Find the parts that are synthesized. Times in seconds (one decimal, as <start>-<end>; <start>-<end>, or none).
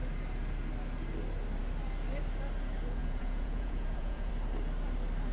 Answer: 3.0-4.3